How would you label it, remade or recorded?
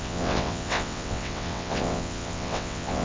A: remade